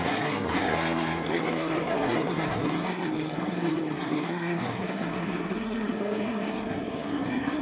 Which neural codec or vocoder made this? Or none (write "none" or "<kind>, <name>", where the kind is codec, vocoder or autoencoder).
codec, SNAC